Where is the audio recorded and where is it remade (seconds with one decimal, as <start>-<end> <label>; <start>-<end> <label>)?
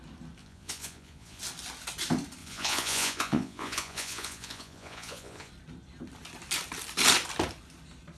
0.0-0.4 recorded; 0.4-1.4 remade; 1.4-2.4 recorded; 2.4-5.5 remade; 5.5-8.2 recorded